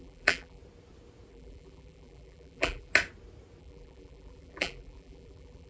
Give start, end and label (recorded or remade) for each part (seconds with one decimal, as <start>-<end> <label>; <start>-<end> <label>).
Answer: 0.0-0.6 remade; 0.6-1.3 recorded; 1.3-2.9 remade; 2.9-3.6 recorded; 3.6-5.7 remade